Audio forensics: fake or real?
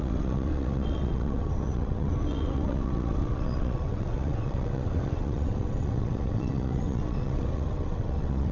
fake